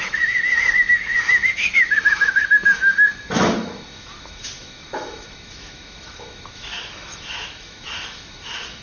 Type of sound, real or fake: fake